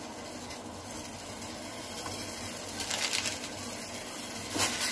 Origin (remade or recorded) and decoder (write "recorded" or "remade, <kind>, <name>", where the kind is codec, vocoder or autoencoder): recorded